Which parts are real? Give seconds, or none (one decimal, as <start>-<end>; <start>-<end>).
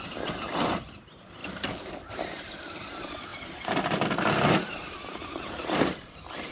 1.4-2.2